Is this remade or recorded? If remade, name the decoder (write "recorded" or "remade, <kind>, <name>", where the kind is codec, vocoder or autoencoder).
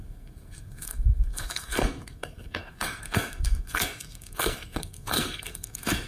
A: remade, codec, SNAC